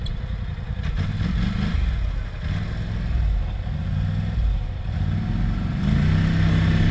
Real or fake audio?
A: real